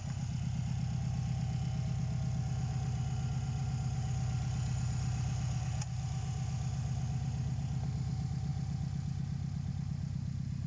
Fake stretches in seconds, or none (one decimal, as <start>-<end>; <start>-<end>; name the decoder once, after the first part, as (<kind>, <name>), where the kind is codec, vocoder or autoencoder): none

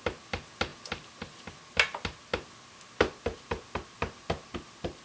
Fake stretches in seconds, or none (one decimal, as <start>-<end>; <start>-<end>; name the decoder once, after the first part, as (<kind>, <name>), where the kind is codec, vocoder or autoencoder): none

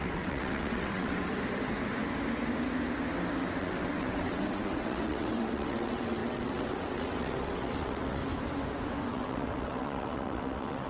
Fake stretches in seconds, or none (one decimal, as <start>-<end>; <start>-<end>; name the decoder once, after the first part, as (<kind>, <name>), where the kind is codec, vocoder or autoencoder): 0.0-1.3 (vocoder, WaveNeXt); 3.6-8.2; 9.1-10.9

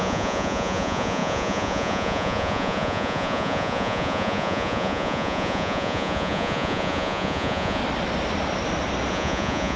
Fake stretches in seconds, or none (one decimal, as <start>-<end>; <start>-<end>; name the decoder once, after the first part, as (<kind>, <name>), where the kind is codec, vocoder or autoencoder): 0.0-7.8 (vocoder, Vocos); 9.1-9.8

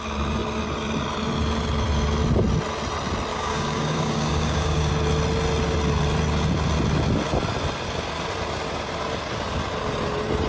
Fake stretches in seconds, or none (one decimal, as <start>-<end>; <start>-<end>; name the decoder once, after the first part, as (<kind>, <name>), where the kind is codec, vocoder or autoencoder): 3.3-4.9 (codec, DAC)

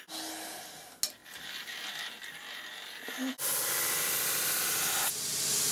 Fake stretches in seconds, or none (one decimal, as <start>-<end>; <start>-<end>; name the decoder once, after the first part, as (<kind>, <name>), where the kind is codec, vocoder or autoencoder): 1.2-4.6 (vocoder, BigVGAN v2)